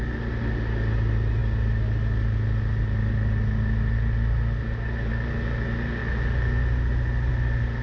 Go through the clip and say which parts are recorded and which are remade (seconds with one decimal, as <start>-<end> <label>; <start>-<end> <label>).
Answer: 0.0-6.0 recorded; 6.0-7.3 remade; 7.3-7.8 recorded